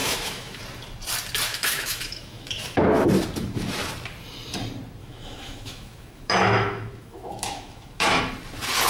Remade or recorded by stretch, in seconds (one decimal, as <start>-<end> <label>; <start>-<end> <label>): 0.0-0.6 remade; 0.6-1.5 recorded; 1.5-2.9 remade; 2.9-5.0 recorded; 5.0-8.2 remade; 8.2-8.9 recorded